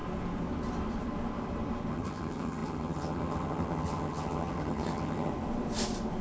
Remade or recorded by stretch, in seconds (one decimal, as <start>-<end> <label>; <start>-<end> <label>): 0.0-1.9 recorded; 1.9-5.3 remade; 5.3-6.2 recorded